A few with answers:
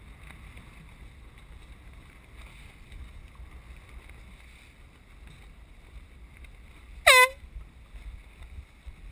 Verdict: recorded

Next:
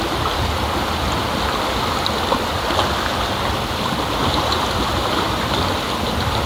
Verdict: recorded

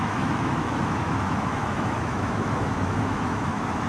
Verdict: remade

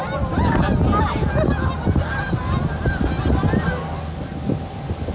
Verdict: recorded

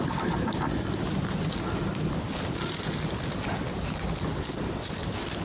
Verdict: recorded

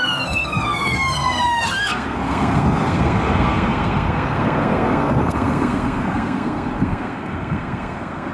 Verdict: remade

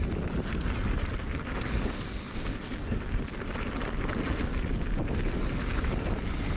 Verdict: recorded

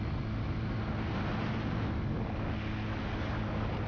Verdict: recorded